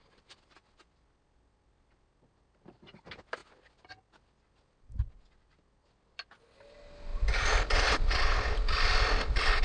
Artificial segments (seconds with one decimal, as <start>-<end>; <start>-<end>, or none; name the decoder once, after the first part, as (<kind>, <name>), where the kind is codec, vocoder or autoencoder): none